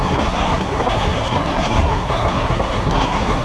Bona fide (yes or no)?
no